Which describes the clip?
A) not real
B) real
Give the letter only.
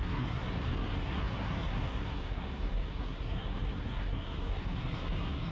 A